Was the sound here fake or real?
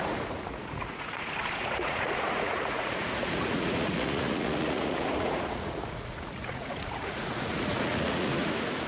fake